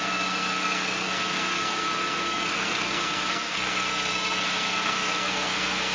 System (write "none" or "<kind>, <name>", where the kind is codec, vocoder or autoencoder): codec, SNAC